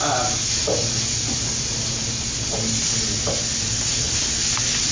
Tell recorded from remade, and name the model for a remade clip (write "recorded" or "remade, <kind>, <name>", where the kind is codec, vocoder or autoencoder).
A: recorded